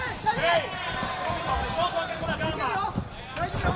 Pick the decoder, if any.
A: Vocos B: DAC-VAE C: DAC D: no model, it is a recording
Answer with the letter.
D